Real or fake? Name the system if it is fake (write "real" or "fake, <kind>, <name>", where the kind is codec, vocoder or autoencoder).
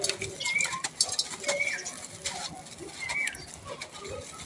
real